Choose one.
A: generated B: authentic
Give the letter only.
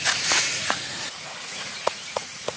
A